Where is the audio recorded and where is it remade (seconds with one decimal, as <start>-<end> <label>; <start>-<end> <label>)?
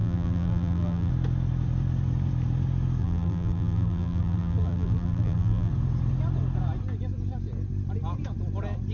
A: 0.0-1.1 remade; 1.1-3.0 recorded; 3.0-5.7 remade; 5.7-8.9 recorded